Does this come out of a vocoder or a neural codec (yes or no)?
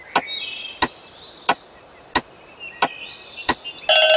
no